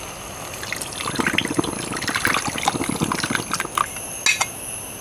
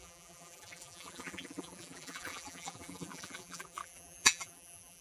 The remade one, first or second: second